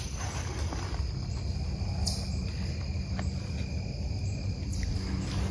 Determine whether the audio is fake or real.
real